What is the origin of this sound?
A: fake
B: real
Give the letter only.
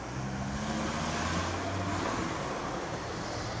B